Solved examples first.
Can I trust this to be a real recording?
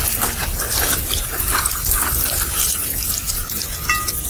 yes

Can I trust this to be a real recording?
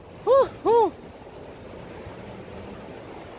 yes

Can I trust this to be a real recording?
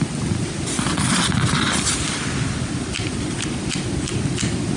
yes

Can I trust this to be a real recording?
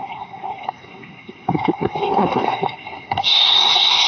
no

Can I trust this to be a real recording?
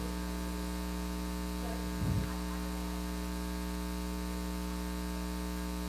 yes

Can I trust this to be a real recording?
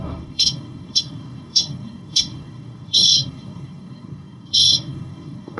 no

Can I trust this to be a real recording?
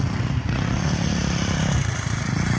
no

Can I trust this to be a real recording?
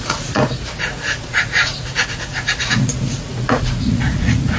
no